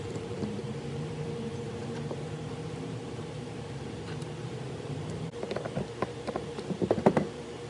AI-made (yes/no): yes